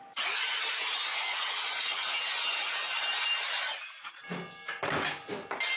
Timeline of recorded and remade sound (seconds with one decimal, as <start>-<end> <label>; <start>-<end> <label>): 0.0-1.1 recorded; 1.1-2.7 remade; 2.7-5.8 recorded